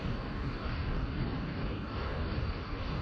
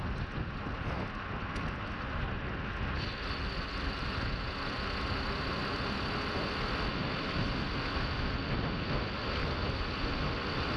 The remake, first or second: first